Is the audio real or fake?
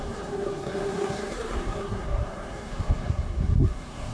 fake